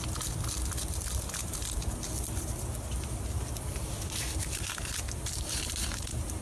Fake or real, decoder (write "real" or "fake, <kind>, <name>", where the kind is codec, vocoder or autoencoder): real